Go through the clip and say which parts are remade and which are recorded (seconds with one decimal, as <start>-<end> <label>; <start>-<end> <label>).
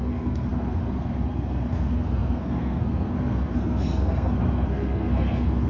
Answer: 0.0-5.7 remade